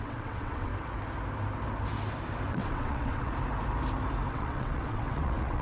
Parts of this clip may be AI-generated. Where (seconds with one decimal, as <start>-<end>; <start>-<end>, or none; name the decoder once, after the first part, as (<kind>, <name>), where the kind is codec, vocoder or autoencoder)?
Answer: 0.0-0.7 (vocoder, WaveNeXt); 2.5-3.3; 4.3-5.6